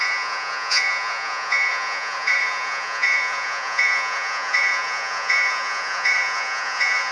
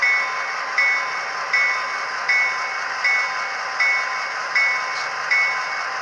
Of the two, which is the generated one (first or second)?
first